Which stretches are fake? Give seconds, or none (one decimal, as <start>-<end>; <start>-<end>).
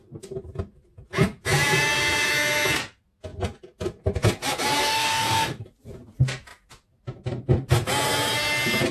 4.8-5.6